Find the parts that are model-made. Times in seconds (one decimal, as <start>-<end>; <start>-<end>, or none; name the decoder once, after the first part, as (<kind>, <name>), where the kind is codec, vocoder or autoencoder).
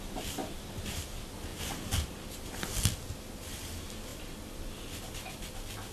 none